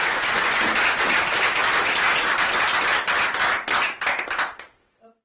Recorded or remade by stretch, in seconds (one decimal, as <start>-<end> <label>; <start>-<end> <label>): 0.0-0.6 remade; 0.6-5.2 recorded